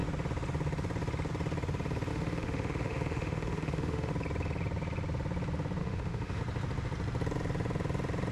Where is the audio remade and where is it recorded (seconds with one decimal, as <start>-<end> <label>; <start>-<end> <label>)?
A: 0.0-2.1 recorded; 2.1-4.1 remade; 4.1-5.8 recorded; 5.8-6.4 remade; 6.4-8.3 recorded